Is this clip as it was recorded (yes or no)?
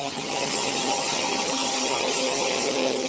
no